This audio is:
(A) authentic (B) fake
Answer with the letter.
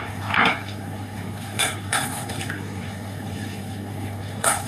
B